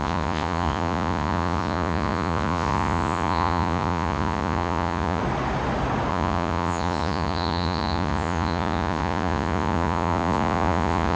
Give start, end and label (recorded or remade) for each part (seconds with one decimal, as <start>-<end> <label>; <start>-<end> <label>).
0.0-5.2 remade; 5.2-6.1 recorded; 6.1-11.2 remade